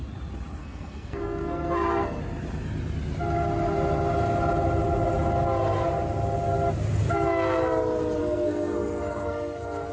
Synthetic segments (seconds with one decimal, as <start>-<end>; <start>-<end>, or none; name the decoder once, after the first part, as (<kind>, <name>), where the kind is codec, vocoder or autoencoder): 0.6-2.2 (codec, SNAC); 8.2-9.9